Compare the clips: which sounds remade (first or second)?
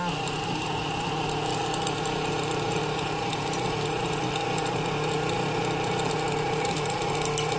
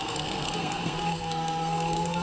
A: second